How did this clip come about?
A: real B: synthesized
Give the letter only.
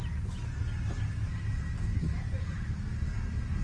A